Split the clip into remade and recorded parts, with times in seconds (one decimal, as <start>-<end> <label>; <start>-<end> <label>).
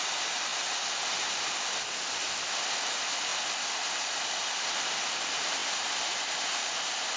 0.0-7.2 recorded